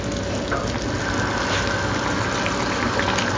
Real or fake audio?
real